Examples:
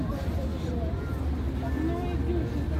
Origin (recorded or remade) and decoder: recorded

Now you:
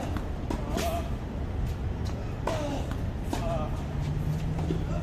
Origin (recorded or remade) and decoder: recorded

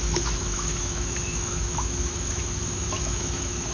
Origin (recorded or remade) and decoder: remade, autoencoder, DAC-VAE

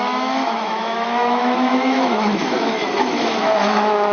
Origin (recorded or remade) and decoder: remade, autoencoder, DAC-VAE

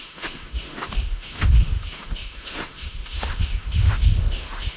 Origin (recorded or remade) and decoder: remade, autoencoder, DAC-VAE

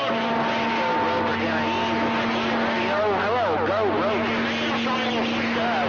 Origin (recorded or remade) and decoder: recorded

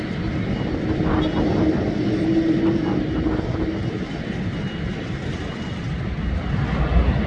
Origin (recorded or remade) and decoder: recorded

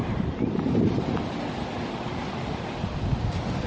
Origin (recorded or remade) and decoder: recorded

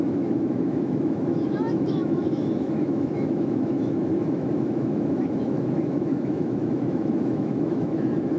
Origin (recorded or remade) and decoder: remade, autoencoder, DAC-VAE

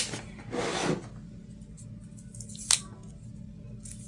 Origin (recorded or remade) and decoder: recorded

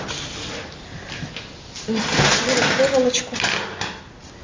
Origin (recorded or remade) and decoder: recorded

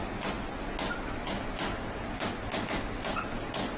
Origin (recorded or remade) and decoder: recorded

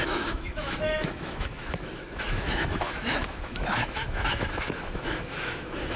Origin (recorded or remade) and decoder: remade, autoencoder, DAC-VAE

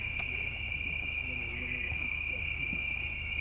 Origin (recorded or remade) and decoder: remade, autoencoder, DAC-VAE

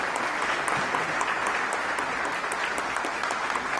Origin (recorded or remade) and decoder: recorded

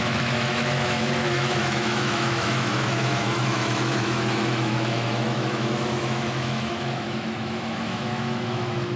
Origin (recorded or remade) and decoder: remade, autoencoder, DAC-VAE